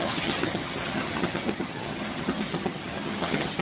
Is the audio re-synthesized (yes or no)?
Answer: yes